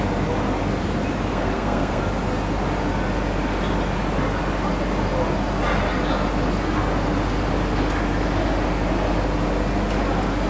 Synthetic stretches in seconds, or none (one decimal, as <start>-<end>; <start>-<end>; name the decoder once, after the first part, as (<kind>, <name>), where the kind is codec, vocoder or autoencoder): 1.3-2.0 (codec, SNAC)